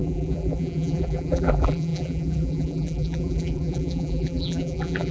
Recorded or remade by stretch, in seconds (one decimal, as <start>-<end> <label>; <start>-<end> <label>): 0.0-5.1 remade